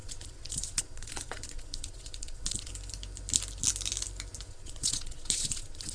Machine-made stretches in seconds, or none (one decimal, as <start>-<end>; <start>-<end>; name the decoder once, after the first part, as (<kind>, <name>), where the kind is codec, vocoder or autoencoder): 0.0-2.7 (vocoder, Vocos); 4.5-5.9